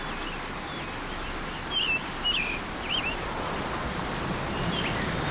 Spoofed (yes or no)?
no